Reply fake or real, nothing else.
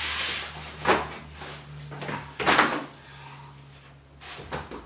real